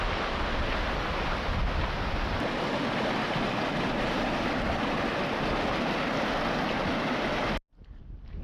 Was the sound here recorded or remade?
recorded